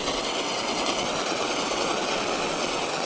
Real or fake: fake